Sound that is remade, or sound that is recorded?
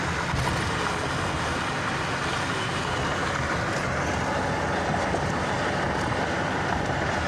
recorded